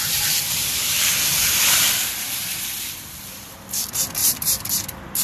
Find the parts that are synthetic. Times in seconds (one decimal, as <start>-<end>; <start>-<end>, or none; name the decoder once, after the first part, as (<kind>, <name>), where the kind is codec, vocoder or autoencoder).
0.0-5.2 (vocoder, BigVGAN v2)